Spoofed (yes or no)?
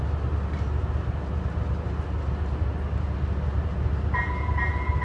no